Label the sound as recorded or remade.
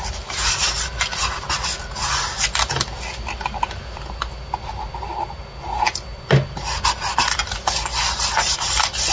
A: recorded